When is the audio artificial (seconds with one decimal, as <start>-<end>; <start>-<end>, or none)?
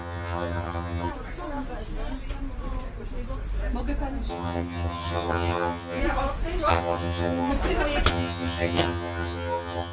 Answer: 0.0-1.1; 4.3-6.0; 6.7-7.5; 8.1-9.9